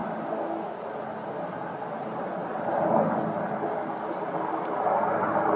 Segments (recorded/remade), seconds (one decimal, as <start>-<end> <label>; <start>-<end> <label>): 0.0-5.6 recorded